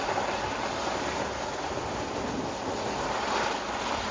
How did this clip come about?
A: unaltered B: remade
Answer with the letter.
A